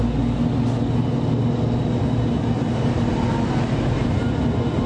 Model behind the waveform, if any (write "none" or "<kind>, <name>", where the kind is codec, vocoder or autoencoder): none